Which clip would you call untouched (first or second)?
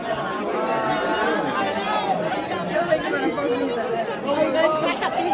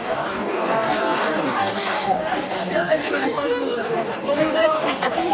first